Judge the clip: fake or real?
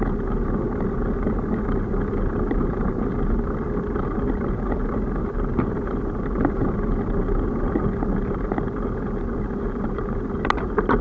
real